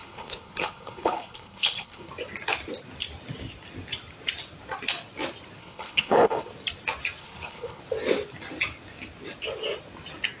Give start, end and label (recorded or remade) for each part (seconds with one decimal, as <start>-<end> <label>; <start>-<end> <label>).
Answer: 0.0-2.1 remade; 2.1-5.6 recorded; 5.6-6.5 remade; 6.5-7.2 recorded; 7.2-7.8 remade; 7.8-10.4 recorded